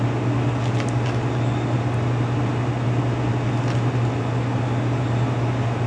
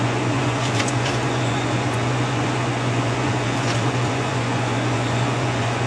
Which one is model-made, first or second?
second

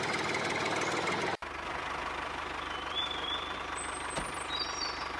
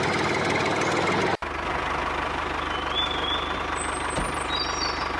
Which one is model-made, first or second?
first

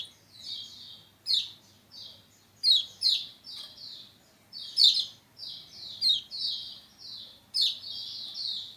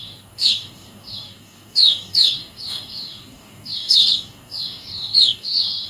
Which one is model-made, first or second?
second